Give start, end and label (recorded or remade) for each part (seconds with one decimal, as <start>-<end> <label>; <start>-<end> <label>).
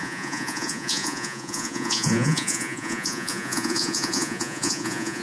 0.0-5.2 remade